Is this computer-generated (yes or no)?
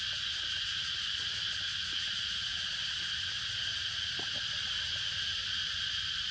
no